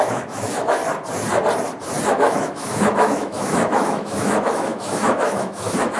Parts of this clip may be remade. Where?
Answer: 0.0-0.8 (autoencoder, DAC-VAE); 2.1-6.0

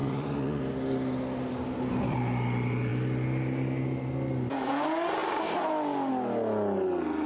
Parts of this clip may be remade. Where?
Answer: 0.0-0.6 (vocoder, Vocos)